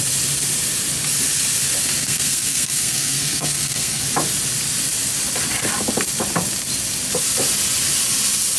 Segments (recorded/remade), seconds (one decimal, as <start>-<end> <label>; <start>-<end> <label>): 0.0-2.0 recorded; 2.0-4.0 remade; 4.0-8.6 recorded